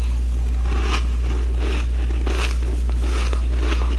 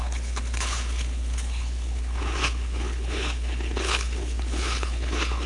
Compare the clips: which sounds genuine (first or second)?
first